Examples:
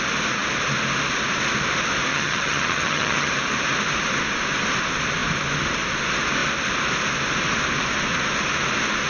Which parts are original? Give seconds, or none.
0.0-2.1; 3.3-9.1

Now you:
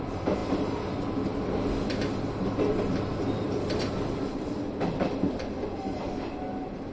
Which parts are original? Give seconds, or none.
0.0-6.9

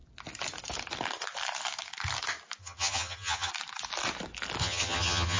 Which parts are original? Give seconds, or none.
0.0-2.6; 3.5-4.6

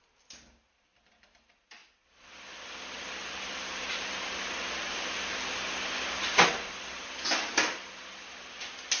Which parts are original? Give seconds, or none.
0.0-9.0

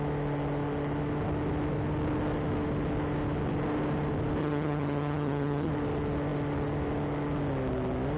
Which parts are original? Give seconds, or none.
0.0-4.4; 5.7-8.2

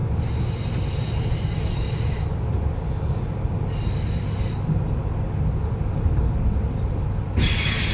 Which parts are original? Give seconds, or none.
0.0-7.9

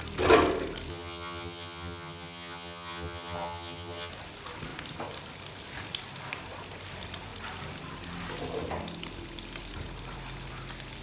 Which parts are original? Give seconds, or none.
0.0-0.9; 4.1-11.0